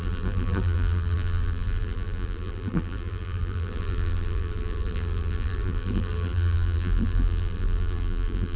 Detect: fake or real fake